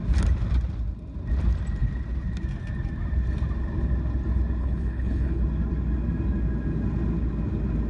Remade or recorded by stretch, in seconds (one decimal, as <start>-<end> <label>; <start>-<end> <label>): 0.0-4.6 recorded; 4.6-5.4 remade; 5.4-7.9 recorded